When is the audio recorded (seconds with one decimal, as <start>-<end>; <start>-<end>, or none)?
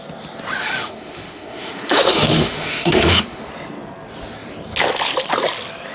0.0-0.6; 3.5-5.9